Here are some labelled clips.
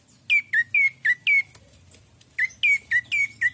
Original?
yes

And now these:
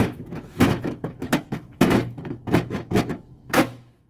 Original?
no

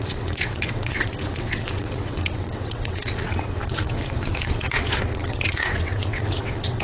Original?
no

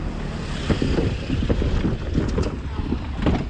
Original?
yes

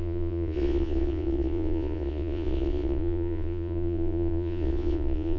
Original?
no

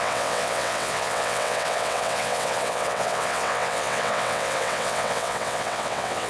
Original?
no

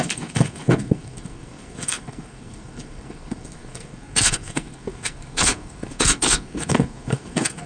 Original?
no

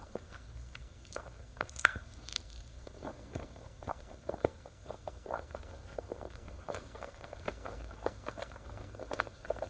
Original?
no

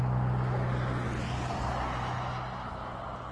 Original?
yes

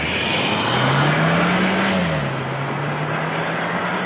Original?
yes